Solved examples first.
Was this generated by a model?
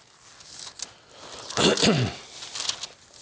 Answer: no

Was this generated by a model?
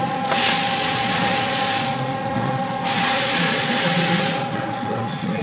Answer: yes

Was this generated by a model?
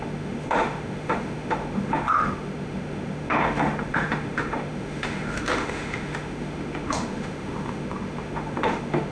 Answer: yes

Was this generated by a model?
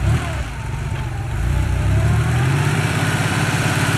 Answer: yes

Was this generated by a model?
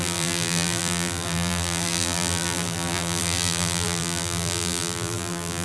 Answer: yes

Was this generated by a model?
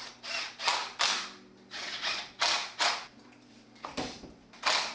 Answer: no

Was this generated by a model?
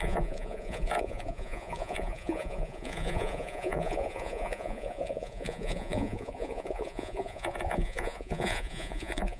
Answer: yes